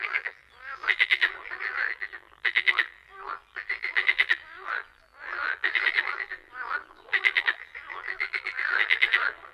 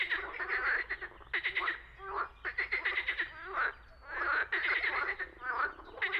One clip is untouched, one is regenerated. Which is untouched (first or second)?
second